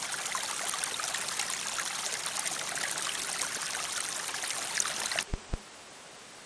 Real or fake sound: real